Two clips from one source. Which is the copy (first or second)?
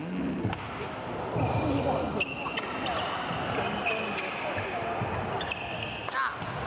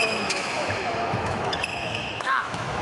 second